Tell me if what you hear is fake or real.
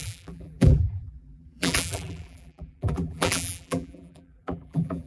fake